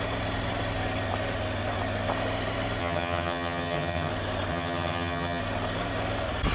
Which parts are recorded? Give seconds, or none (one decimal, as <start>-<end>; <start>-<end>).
0.0-2.8; 4.1-4.5; 5.4-6.5